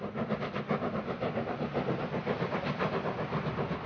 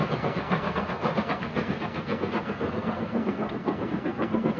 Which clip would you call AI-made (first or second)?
second